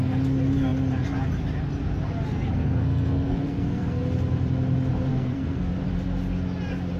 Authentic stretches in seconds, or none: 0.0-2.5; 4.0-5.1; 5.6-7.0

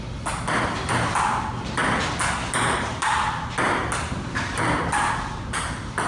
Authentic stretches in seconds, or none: 0.0-6.1

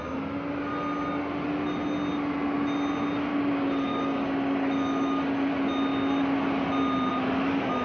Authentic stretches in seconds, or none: 0.0-3.3; 5.5-7.8

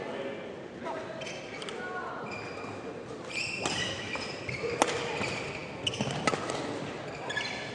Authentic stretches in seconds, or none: 0.0-7.7

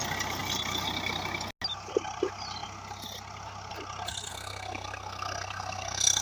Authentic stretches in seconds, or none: 0.0-4.3

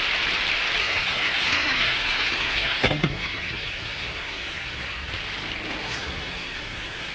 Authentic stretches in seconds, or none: 0.0-0.8; 5.1-5.8

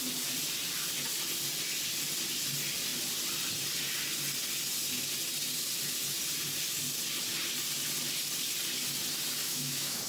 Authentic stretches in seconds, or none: 0.0-9.4

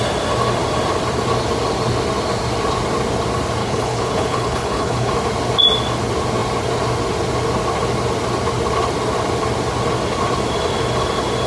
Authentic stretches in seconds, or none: 0.0-3.6; 5.1-11.5